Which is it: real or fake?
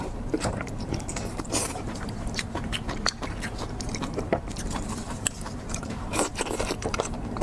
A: fake